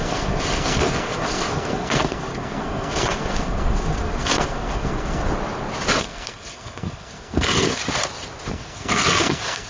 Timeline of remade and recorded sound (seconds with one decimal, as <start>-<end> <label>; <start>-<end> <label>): 0.0-5.2 remade; 5.2-6.0 recorded; 6.0-7.8 remade; 7.8-8.5 recorded; 8.5-9.7 remade